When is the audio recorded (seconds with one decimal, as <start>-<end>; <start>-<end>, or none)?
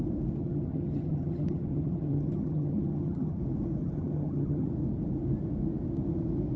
0.0-0.4; 3.4-3.8; 4.7-6.6